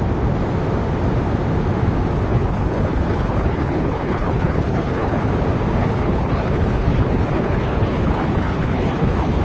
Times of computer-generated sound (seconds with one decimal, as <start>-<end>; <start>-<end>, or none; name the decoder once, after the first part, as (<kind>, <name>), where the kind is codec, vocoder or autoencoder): 2.3-5.3 (codec, HILCodec); 5.8-9.4